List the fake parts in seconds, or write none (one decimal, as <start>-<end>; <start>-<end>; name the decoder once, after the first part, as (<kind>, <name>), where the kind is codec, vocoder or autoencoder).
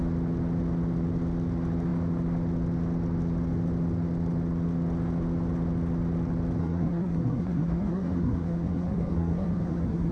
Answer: 6.6-10.1 (codec, SNAC)